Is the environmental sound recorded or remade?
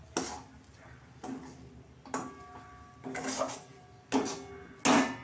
recorded